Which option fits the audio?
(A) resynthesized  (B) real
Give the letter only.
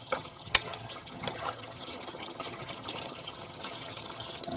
A